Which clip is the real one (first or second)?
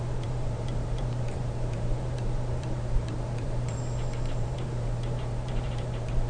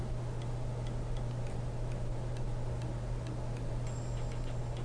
second